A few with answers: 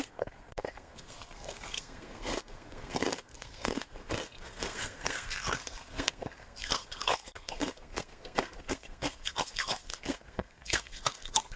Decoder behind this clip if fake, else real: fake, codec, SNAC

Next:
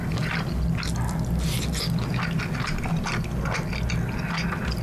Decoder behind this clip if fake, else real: real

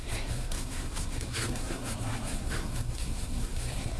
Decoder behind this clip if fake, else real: fake, codec, SNAC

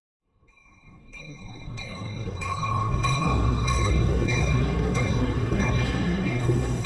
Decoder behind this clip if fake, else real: fake, codec, SNAC